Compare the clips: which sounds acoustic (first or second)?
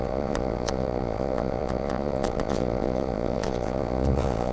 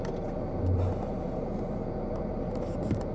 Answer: second